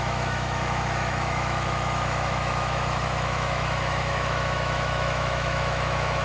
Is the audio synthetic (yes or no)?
yes